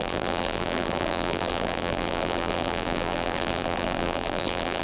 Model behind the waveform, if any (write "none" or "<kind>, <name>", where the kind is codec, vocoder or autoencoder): vocoder, BigVGAN v2